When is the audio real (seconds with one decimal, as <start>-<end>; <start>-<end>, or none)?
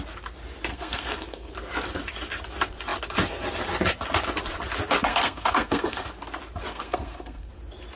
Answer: 0.0-0.7; 1.5-5.1; 6.1-6.7; 7.5-8.0